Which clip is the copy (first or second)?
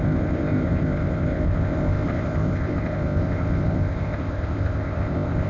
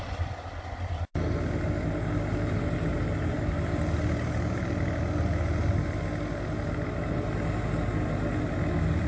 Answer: first